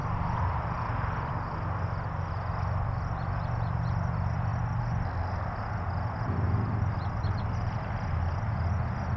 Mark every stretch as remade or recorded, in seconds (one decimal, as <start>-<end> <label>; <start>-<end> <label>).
0.0-1.3 remade; 1.3-9.2 recorded